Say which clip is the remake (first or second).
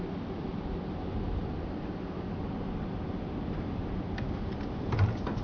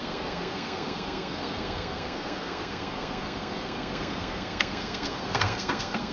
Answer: second